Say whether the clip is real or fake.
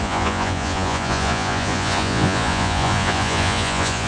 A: fake